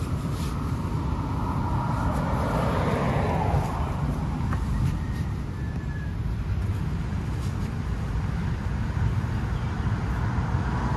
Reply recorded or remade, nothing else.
recorded